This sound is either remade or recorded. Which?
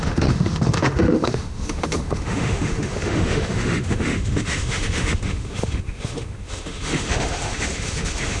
remade